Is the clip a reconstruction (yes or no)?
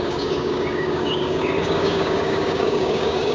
yes